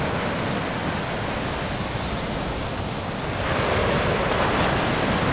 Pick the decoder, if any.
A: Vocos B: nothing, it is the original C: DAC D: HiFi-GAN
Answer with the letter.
B